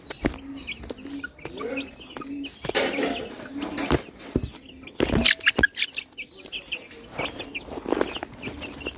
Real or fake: real